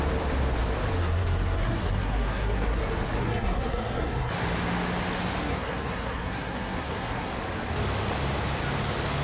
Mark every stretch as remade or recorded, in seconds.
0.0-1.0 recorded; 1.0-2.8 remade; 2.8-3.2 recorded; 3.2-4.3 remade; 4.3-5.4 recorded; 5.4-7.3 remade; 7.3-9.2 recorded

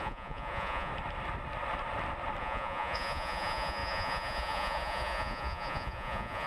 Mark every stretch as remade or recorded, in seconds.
0.0-0.9 remade; 0.9-2.4 recorded; 2.4-6.5 remade